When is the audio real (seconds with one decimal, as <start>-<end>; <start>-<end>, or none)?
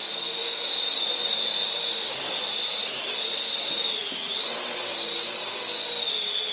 0.0-6.5